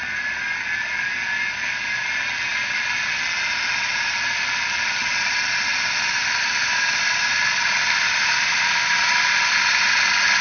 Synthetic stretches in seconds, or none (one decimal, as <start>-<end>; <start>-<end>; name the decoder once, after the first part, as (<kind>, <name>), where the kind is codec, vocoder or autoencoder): none